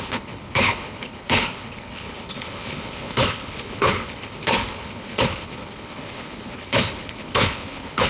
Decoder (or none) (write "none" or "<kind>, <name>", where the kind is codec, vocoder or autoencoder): codec, HILCodec